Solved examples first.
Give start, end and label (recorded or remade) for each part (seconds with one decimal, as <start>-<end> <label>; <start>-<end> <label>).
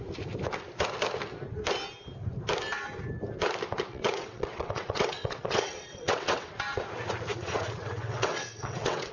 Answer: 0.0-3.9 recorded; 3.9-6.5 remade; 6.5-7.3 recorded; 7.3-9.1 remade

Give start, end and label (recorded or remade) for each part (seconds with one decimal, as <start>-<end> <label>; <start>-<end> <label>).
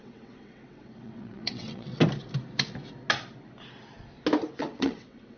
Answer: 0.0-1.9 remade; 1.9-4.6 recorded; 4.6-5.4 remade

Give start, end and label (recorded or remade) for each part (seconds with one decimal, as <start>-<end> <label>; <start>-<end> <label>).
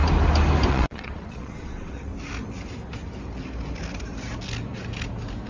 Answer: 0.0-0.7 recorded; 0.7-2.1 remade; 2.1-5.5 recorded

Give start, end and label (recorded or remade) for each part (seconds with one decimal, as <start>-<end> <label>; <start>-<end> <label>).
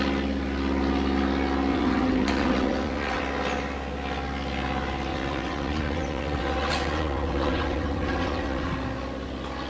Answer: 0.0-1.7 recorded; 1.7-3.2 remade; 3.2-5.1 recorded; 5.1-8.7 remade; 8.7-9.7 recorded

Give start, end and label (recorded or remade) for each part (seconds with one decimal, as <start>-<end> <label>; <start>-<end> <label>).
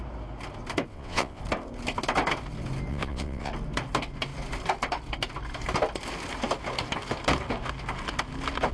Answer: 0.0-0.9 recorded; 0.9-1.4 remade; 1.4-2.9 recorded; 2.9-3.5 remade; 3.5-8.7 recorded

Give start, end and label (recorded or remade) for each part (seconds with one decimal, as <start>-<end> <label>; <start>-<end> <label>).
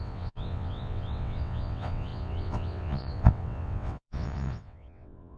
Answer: 0.0-5.4 remade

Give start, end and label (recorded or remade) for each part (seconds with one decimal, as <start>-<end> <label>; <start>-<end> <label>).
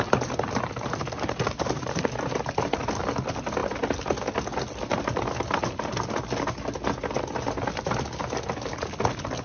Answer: 0.0-9.4 recorded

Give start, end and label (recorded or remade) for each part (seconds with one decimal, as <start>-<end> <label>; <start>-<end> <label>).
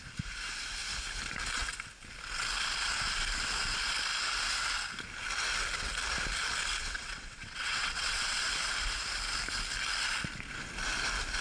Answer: 0.0-6.8 recorded; 6.8-8.5 remade; 8.5-11.4 recorded